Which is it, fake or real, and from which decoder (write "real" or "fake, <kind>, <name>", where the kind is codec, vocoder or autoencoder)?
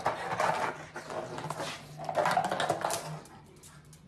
real